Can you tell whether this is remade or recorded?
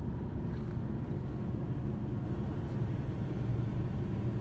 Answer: recorded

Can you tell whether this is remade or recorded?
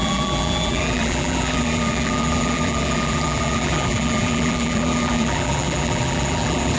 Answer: remade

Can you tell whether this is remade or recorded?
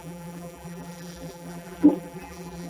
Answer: remade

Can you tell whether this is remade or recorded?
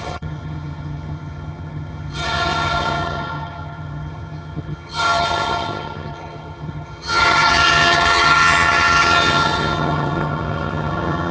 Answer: remade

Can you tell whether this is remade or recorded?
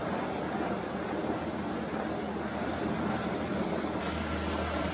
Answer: recorded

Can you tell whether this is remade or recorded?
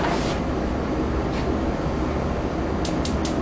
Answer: recorded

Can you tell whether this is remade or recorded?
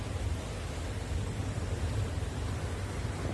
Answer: recorded